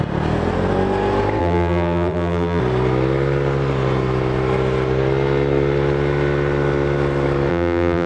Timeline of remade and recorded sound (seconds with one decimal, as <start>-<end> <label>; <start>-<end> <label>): 0.0-1.4 recorded; 1.4-2.6 remade; 2.6-7.5 recorded; 7.5-8.1 remade